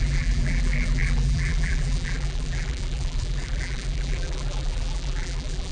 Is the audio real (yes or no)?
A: no